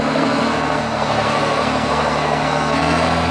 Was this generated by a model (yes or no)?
yes